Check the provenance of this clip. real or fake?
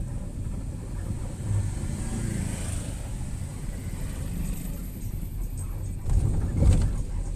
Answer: real